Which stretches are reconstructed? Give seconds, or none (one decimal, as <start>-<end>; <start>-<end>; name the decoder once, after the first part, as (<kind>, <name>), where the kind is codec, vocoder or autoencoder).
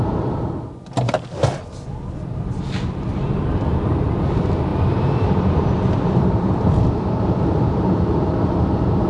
3.1-4.0 (vocoder, BigVGAN v2); 4.7-9.1